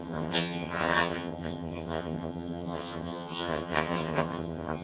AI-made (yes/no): yes